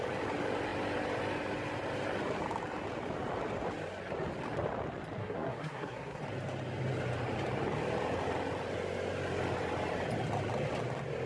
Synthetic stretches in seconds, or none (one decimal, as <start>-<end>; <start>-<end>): 5.2-6.2